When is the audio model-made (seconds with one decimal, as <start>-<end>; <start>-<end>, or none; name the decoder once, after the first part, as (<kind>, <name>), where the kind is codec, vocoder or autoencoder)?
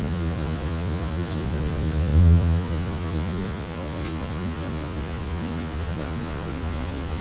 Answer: 0.0-7.2 (vocoder, Vocos)